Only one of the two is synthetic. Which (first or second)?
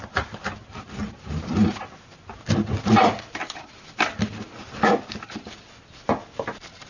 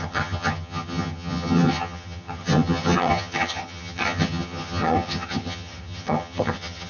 second